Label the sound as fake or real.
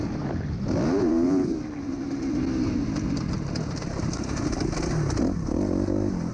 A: real